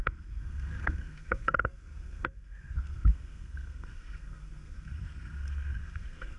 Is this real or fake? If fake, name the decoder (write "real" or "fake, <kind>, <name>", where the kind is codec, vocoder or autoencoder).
fake, codec, SNAC